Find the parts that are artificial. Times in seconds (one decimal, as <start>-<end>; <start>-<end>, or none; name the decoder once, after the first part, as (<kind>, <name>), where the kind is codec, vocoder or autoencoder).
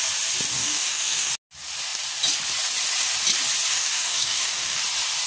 0.5-1.3 (codec, DAC); 3.7-4.8